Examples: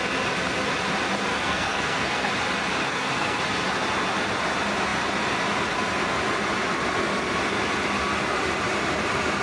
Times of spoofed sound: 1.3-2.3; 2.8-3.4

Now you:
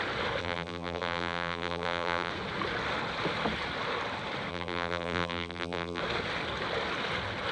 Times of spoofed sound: 0.4-2.3; 4.5-6.0

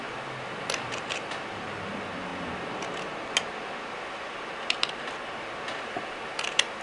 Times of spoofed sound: none